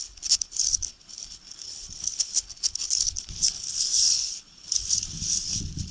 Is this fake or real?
fake